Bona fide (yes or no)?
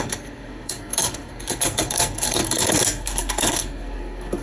no